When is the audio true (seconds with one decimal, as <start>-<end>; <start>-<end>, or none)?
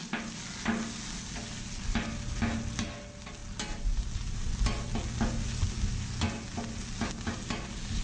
0.0-8.0